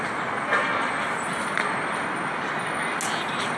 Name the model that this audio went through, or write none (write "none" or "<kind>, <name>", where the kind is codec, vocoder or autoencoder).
none